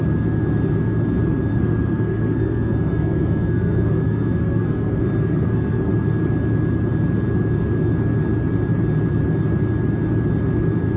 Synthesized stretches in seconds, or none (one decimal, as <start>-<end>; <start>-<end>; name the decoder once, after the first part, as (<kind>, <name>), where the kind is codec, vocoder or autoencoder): 1.5-5.9 (codec, SNAC)